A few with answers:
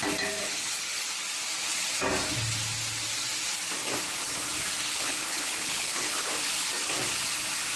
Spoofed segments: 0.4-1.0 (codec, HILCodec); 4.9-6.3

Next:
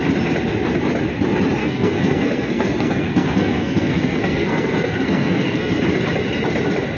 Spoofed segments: 1.6-5.8 (codec, SNAC)

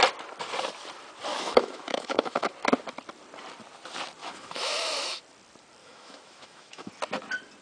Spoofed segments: 1.3-2.5 (autoencoder, DAC-VAE); 4.2-5.2; 5.8-6.9